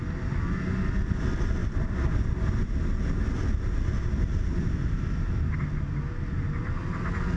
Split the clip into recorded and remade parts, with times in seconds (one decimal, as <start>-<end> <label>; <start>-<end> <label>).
0.0-1.6 recorded; 1.6-2.7 remade; 2.7-7.4 recorded